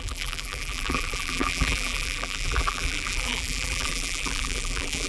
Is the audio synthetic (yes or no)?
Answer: yes